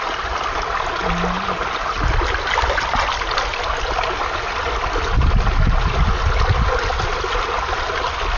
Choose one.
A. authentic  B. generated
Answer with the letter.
A